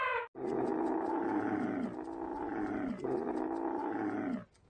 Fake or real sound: real